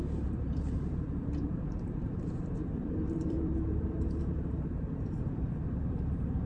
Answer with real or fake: fake